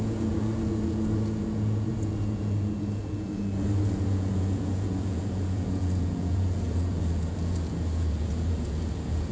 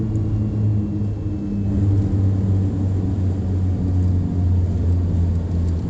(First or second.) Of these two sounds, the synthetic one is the first